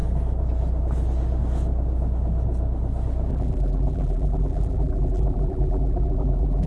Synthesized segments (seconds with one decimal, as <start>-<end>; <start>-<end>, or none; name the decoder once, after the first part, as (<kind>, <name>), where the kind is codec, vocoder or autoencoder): 3.3-6.7 (vocoder, BigVGAN v2)